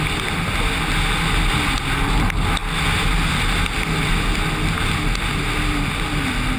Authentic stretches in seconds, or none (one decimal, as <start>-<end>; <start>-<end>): 0.0-6.6